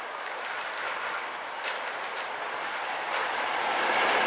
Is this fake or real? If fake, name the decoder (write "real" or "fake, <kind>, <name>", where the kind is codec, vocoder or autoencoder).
real